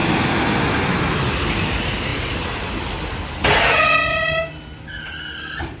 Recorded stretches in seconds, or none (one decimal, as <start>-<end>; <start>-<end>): 0.0-5.8